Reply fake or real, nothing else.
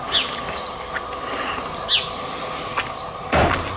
real